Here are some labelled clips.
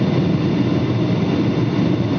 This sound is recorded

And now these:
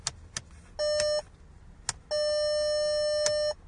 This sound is recorded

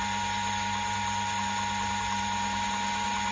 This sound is recorded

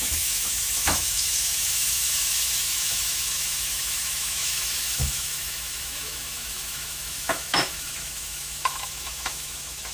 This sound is remade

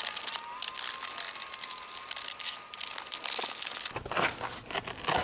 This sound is recorded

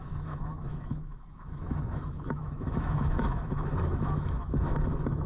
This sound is remade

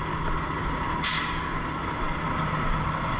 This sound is recorded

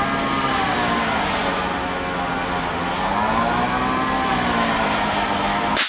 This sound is recorded